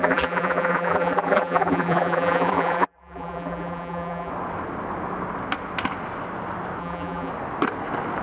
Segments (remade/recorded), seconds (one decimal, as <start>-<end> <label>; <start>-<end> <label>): 0.0-4.3 remade; 4.3-6.8 recorded; 6.8-7.3 remade; 7.3-8.2 recorded